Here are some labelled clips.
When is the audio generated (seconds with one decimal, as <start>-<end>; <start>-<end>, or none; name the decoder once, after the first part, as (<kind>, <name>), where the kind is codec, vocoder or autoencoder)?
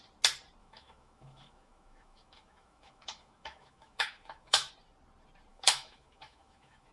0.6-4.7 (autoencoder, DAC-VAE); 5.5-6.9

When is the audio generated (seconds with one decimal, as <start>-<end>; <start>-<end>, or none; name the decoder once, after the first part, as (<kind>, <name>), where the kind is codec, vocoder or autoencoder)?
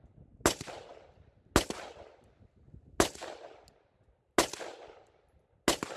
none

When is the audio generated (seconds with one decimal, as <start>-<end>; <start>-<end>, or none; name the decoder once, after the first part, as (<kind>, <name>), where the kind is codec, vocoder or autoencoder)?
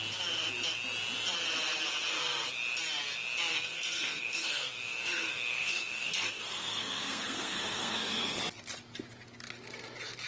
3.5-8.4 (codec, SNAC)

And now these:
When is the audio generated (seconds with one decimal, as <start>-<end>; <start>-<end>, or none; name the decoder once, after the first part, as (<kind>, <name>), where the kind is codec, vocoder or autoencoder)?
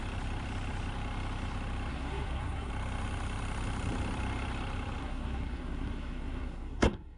1.9-2.7 (codec, SNAC); 5.0-7.2